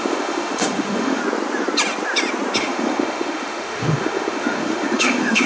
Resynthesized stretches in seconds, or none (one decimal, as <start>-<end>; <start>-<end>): 0.0-1.2; 2.6-5.5